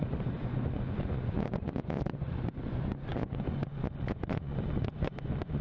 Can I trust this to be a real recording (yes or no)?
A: no